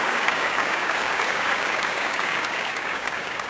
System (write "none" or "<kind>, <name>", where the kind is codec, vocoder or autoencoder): codec, DAC